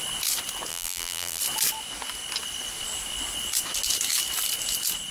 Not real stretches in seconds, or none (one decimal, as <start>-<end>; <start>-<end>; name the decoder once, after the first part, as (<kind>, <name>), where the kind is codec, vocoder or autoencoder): 0.7-1.4 (vocoder, BigVGAN v2)